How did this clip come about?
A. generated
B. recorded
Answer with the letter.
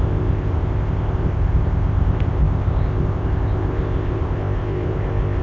A